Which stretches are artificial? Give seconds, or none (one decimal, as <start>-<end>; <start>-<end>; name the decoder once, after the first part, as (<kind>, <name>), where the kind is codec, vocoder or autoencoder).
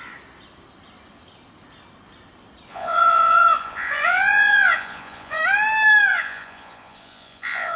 2.7-5.4 (vocoder, Vocos); 6.1-7.8